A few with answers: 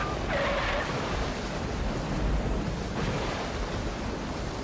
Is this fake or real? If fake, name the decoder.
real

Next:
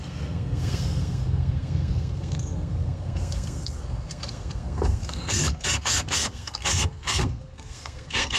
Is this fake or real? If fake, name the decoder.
fake, codec, SNAC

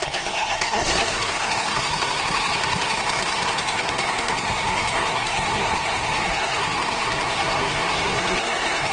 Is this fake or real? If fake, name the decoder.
fake, codec, SNAC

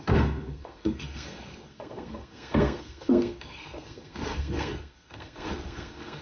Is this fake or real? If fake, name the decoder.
fake, codec, SNAC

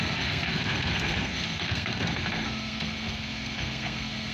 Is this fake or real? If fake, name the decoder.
fake, codec, SNAC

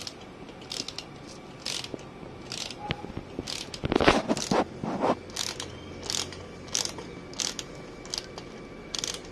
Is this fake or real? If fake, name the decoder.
real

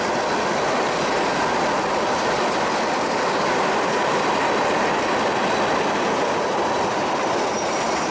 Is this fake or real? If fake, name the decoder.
real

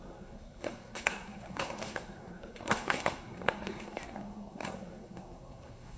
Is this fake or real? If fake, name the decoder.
fake, codec, SNAC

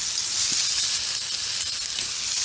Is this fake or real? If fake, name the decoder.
real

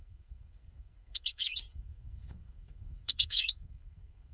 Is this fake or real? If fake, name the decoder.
fake, codec, SNAC